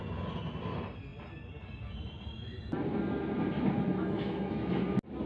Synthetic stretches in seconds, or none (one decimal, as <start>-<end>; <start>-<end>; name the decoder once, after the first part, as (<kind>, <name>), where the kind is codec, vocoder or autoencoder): 3.9-4.8 (autoencoder, DAC-VAE)